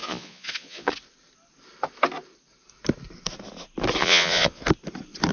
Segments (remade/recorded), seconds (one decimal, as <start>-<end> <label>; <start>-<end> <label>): 0.0-0.9 remade; 0.9-4.0 recorded; 4.0-4.6 remade; 4.6-5.3 recorded